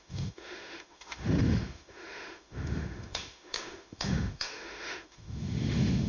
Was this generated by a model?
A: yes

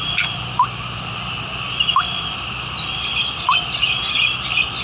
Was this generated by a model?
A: no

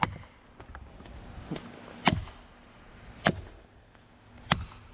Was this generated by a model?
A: no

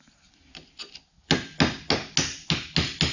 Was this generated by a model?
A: no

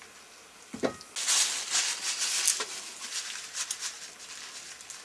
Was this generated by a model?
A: no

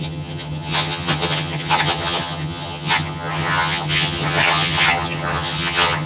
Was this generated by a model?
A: yes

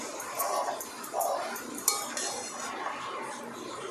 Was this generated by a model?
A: no